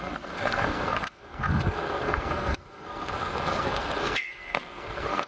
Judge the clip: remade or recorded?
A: remade